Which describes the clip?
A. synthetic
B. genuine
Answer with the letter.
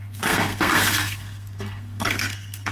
A